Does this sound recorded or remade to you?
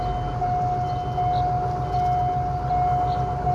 recorded